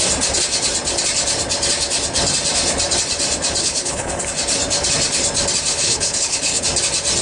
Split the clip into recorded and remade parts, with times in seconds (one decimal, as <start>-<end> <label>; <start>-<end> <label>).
0.0-3.6 recorded; 3.6-4.1 remade; 4.1-5.7 recorded; 5.7-6.6 remade; 6.6-7.2 recorded

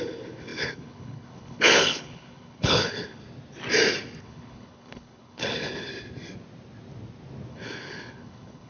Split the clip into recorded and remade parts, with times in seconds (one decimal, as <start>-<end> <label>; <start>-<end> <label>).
0.0-3.2 remade; 3.2-4.2 recorded; 4.2-5.9 remade; 5.9-7.5 recorded; 7.5-8.7 remade